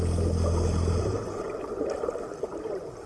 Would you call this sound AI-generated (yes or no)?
no